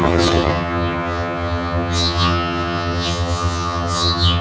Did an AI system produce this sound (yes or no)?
yes